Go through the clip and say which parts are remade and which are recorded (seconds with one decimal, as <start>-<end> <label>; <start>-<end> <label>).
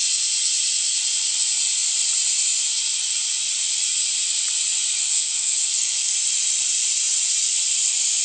0.0-5.0 recorded; 5.0-6.1 remade; 6.1-8.2 recorded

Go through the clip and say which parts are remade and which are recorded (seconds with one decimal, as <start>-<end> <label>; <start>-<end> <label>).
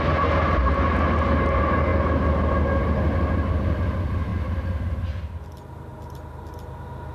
0.0-7.1 recorded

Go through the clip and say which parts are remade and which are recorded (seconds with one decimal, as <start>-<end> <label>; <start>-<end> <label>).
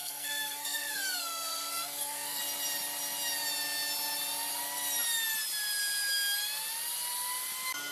0.0-2.4 remade; 2.4-7.9 recorded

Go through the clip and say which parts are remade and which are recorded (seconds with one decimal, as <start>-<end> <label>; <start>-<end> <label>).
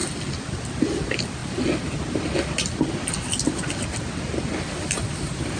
0.0-5.6 recorded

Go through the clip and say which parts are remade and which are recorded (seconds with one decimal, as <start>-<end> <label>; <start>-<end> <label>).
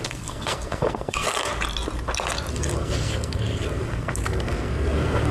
0.0-1.5 remade; 1.5-2.5 recorded; 2.5-5.3 remade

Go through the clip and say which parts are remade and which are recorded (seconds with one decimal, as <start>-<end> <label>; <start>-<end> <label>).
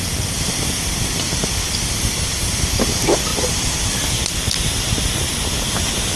0.0-6.2 recorded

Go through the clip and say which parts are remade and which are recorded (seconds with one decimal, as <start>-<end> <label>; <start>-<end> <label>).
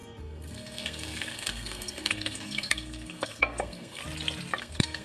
0.0-4.0 remade; 4.0-4.6 recorded; 4.6-5.0 remade